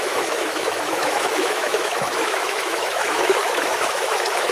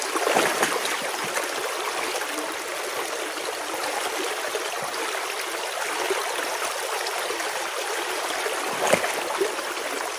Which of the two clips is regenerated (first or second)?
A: first